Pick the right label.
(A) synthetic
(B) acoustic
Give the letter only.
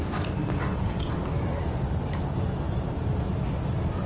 B